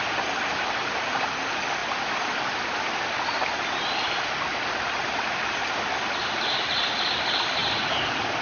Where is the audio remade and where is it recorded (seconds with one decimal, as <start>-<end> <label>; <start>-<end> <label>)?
0.0-8.4 recorded